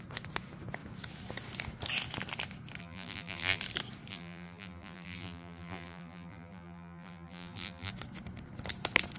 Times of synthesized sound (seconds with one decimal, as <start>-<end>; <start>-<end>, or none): 2.8-3.6; 4.1-7.9